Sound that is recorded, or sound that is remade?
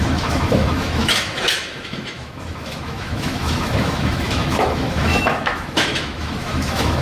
remade